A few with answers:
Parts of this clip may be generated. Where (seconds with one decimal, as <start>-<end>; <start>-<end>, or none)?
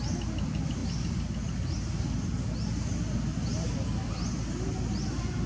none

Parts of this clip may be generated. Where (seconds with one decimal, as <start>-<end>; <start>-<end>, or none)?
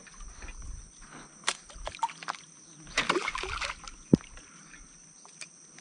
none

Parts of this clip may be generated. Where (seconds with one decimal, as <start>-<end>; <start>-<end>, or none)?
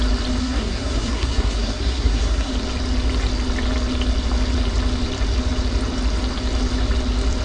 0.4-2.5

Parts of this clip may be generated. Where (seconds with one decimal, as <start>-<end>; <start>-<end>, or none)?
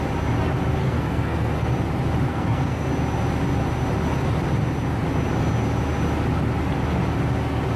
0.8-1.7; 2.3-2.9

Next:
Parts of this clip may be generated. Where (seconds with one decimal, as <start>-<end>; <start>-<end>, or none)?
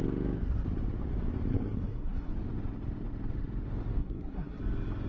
1.5-2.3; 4.0-4.6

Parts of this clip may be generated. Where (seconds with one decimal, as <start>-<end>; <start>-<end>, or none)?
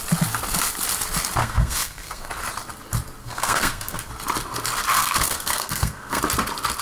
1.4-2.3; 3.2-4.1; 4.9-6.2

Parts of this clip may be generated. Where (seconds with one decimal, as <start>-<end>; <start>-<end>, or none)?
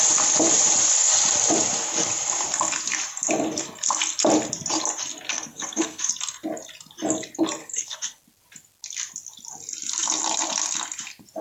5.3-6.1; 7.6-8.2